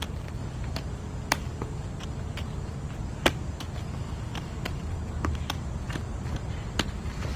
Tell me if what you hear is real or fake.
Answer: fake